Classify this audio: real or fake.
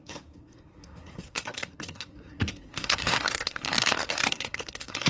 fake